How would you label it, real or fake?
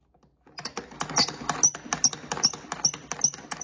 real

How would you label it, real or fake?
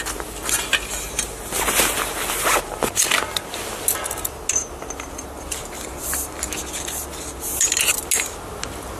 real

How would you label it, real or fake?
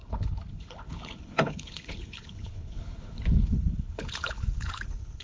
fake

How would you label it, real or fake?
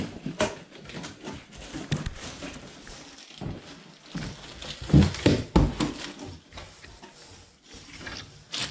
real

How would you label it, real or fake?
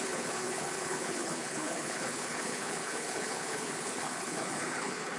fake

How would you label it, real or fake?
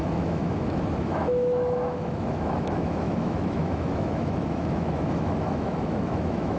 fake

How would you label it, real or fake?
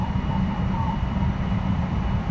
fake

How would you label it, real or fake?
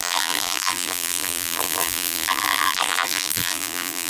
fake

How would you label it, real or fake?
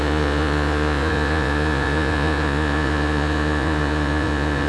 fake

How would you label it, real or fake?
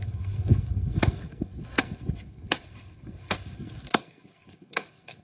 fake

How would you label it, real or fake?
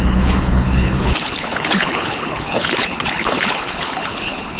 fake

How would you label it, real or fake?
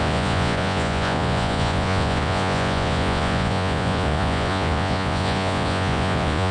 fake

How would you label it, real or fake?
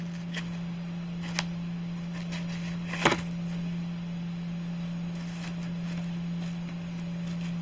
real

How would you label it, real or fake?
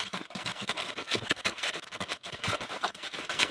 fake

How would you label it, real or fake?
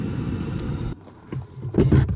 fake